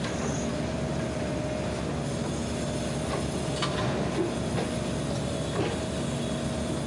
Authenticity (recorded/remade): recorded